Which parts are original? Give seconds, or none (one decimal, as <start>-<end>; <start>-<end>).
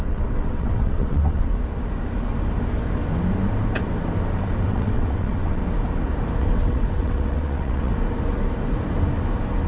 1.5-4.7; 5.6-6.4; 7.9-9.7